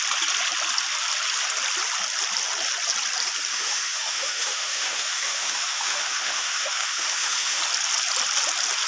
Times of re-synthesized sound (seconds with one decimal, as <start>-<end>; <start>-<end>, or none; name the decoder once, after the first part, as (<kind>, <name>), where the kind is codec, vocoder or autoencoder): 3.5-7.6 (autoencoder, DAC-VAE)